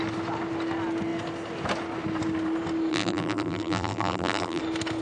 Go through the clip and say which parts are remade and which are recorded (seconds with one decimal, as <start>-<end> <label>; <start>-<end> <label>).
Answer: 0.0-2.9 recorded; 2.9-4.6 remade; 4.6-5.0 recorded